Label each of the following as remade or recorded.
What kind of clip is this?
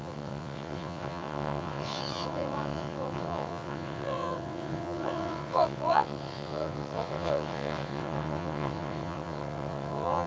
remade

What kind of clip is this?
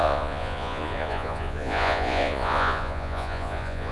remade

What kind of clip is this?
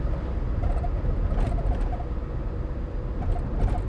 recorded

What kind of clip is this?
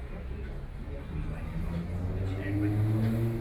recorded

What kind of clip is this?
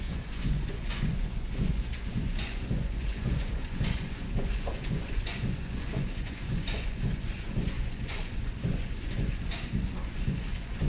remade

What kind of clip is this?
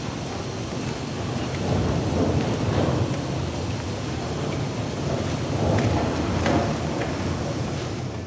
recorded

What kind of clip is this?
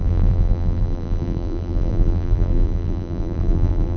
remade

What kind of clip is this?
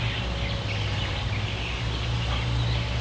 recorded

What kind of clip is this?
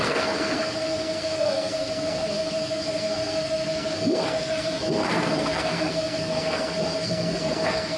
remade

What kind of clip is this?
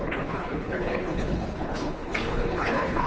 remade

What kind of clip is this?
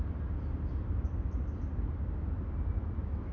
recorded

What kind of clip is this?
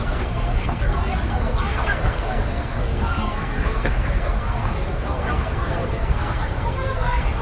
remade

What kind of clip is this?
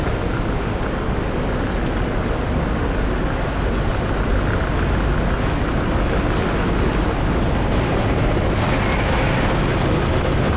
recorded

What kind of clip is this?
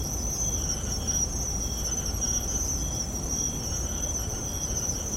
recorded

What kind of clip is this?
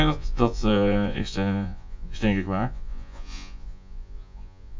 remade